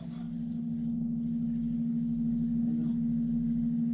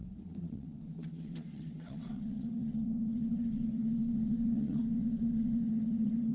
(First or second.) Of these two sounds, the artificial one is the second